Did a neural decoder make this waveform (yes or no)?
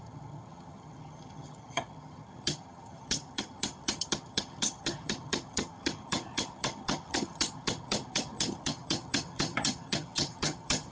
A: yes